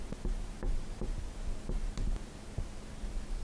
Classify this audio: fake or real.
real